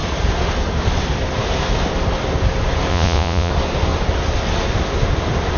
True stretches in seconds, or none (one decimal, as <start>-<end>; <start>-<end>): 0.0-2.9; 3.5-5.6

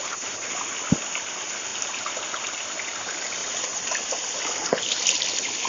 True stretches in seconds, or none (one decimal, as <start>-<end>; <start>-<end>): 0.0-3.4; 3.9-5.7

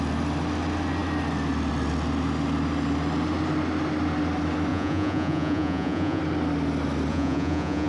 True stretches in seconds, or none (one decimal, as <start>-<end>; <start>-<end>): 0.0-4.7; 6.2-7.1